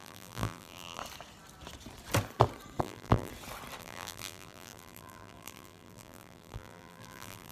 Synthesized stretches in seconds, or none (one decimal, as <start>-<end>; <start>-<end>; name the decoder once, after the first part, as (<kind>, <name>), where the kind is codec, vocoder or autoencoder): 0.0-1.0 (vocoder, BigVGAN v2); 2.8-3.3; 3.8-7.5